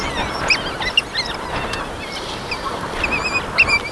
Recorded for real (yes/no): yes